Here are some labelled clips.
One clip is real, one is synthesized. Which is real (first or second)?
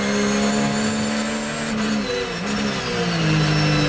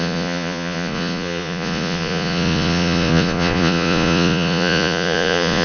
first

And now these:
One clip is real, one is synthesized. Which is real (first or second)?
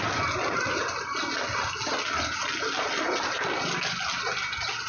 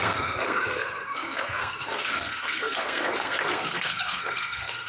first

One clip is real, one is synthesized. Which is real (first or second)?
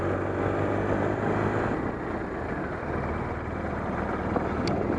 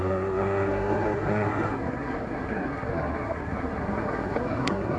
first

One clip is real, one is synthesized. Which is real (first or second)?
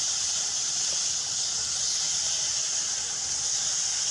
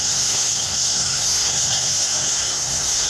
first